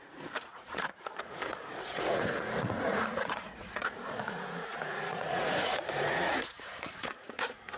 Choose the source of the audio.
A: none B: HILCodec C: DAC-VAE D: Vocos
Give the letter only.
D